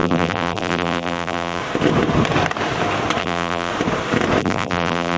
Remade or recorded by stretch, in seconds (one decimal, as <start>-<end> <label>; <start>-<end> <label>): 0.0-1.6 remade; 1.6-3.2 recorded; 3.2-3.7 remade; 3.7-4.4 recorded; 4.4-5.2 remade